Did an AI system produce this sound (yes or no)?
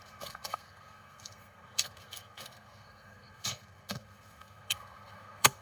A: yes